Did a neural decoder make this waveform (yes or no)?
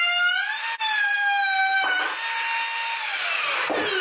no